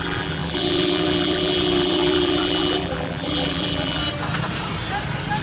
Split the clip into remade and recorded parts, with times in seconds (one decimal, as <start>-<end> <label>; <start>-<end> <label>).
0.0-4.0 remade; 4.0-5.4 recorded